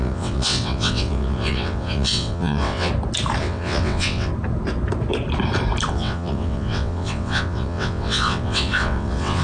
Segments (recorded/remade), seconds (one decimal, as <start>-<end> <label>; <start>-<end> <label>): 0.0-2.9 remade; 2.9-3.4 recorded; 3.4-4.3 remade; 4.3-5.9 recorded; 5.9-9.4 remade